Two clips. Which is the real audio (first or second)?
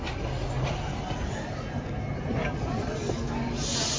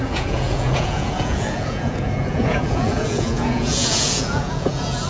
first